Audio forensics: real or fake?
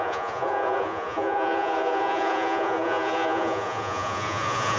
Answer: fake